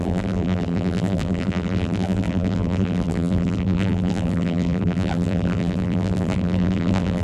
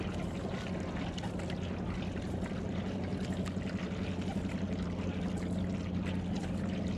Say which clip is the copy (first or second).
first